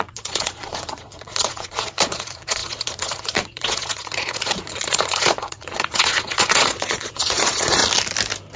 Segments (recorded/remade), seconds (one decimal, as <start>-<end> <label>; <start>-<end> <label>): 0.0-7.8 remade; 7.8-8.6 recorded